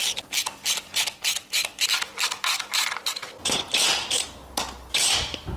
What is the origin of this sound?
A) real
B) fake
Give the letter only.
A